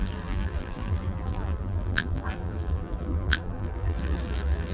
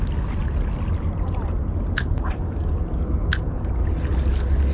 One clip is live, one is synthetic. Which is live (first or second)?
second